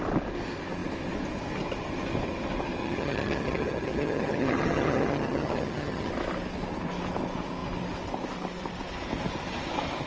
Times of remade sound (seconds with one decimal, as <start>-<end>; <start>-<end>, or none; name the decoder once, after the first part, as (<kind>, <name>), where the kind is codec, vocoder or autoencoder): 2.8-6.1 (vocoder, HiFi-GAN)